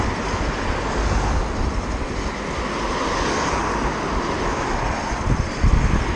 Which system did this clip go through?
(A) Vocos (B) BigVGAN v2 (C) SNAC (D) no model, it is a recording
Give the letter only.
D